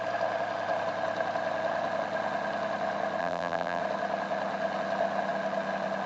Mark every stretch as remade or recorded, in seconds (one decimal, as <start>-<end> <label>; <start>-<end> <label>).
0.0-3.2 recorded; 3.2-3.8 remade; 3.8-6.1 recorded